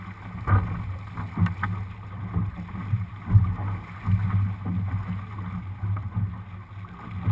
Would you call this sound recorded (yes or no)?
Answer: yes